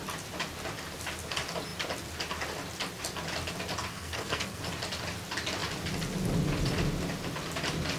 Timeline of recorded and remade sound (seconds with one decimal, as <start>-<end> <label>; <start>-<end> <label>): 0.0-3.9 recorded; 3.9-4.6 remade; 4.6-8.0 recorded